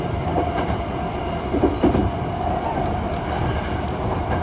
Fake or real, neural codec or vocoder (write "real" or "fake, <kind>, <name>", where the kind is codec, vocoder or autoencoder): fake, vocoder, BigVGAN v2